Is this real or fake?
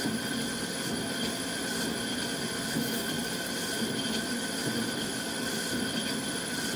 fake